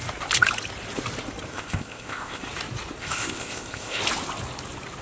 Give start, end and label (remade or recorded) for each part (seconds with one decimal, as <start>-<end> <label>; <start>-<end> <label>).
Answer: 0.0-1.5 recorded; 1.5-2.4 remade; 2.4-3.0 recorded; 3.0-4.0 remade; 4.0-5.0 recorded

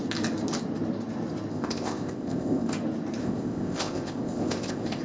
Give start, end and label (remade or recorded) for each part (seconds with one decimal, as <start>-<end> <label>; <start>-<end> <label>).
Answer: 0.0-1.5 recorded; 1.5-2.7 remade; 2.7-3.2 recorded; 3.2-5.0 remade

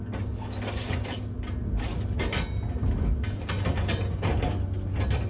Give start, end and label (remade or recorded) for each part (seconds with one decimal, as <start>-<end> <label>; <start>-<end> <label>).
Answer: 0.0-5.3 recorded

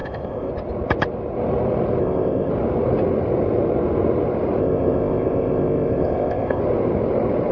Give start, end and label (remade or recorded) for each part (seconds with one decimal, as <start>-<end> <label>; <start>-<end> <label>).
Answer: 0.0-0.5 remade; 0.5-2.0 recorded; 2.0-2.5 remade; 2.5-4.6 recorded; 4.6-6.6 remade; 6.6-7.5 recorded

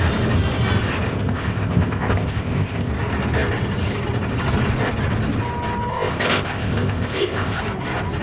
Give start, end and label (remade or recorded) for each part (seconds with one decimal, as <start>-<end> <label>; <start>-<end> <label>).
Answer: 0.0-1.1 recorded; 1.1-2.9 remade; 2.9-5.9 recorded; 5.9-7.6 remade; 7.6-8.2 recorded